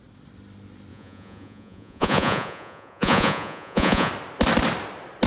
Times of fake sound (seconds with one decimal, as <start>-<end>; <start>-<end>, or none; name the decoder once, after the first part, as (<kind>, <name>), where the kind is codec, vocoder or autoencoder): 0.9-4.1 (vocoder, Vocos)